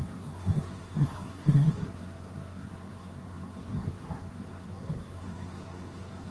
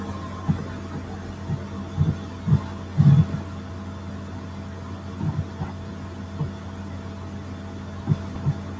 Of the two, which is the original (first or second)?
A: second